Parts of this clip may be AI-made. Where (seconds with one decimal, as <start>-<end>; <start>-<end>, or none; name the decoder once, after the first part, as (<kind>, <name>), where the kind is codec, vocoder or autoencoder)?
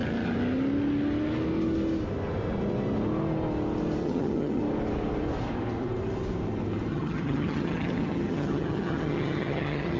4.0-4.6 (vocoder, HiFi-GAN); 6.9-10.0